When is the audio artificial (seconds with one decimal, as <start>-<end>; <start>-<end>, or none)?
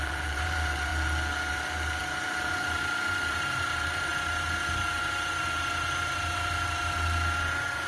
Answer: 0.0-0.9; 1.5-4.1